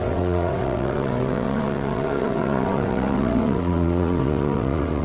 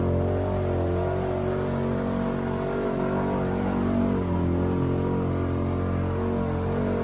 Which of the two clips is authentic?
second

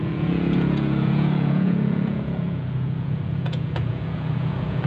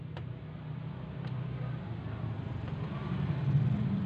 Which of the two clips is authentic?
second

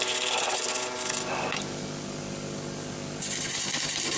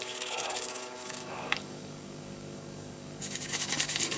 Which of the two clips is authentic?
first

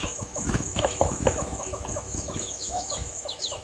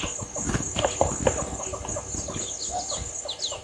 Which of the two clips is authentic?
second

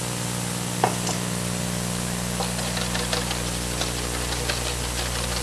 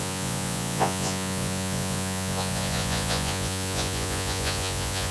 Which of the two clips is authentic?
first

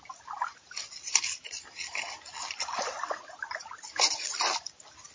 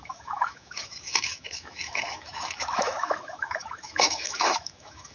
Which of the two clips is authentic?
first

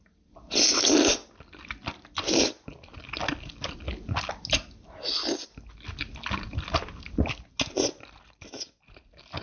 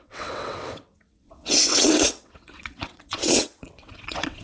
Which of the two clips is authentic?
first